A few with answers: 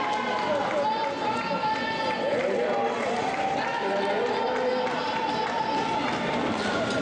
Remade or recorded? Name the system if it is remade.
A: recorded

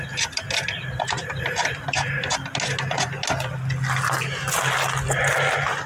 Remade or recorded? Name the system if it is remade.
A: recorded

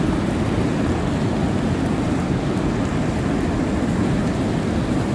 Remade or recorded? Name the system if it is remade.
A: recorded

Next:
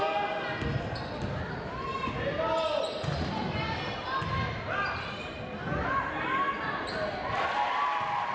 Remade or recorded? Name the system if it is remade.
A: recorded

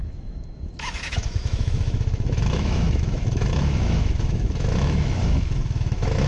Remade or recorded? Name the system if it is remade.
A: remade, autoencoder, DAC-VAE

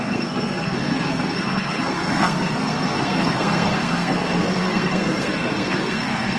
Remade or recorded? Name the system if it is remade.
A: remade, codec, SNAC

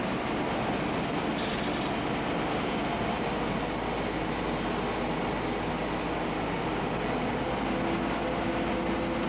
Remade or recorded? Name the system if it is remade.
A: recorded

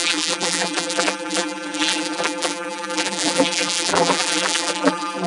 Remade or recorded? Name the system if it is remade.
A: remade, vocoder, BigVGAN v2